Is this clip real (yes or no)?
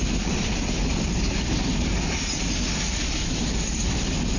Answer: yes